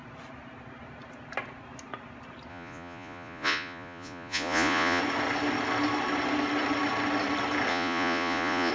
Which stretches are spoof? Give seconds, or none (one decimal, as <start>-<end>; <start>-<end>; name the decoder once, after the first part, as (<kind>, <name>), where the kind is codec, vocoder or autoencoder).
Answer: 2.5-5.0 (vocoder, Vocos); 7.7-8.7